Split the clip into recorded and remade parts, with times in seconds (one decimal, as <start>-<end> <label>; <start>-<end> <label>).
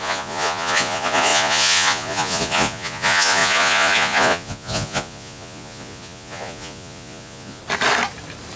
0.0-7.6 remade; 7.6-8.6 recorded